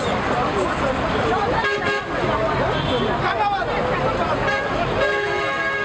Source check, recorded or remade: recorded